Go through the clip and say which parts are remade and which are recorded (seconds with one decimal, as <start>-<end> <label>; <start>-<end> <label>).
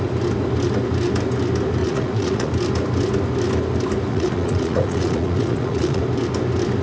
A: 0.0-1.8 recorded; 1.8-2.5 remade; 2.5-4.1 recorded; 4.1-6.0 remade; 6.0-6.8 recorded